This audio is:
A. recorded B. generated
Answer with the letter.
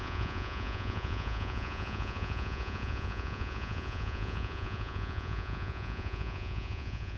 B